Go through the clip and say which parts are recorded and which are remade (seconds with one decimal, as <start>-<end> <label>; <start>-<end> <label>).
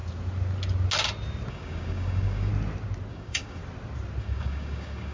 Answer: 0.0-1.5 recorded; 1.5-2.5 remade; 2.5-3.1 recorded; 3.1-3.6 remade; 3.6-4.2 recorded; 4.2-5.1 remade